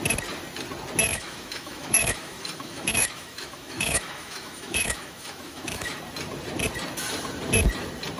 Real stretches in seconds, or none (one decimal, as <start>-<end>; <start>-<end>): 0.0-1.1; 6.0-8.2